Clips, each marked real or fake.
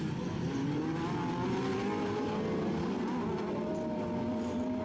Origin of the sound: real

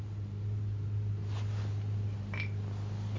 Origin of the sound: real